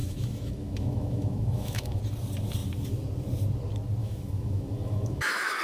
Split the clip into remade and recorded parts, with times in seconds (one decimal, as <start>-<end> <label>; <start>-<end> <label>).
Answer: 0.0-2.0 remade; 2.0-4.0 recorded; 4.0-5.6 remade